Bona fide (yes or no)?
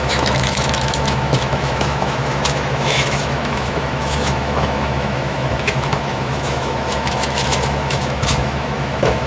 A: no